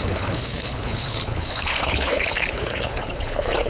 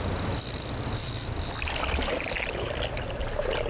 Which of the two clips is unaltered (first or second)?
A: second